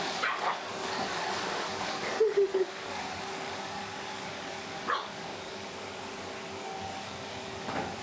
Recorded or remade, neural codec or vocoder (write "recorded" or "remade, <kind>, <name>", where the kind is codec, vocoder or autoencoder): remade, codec, DAC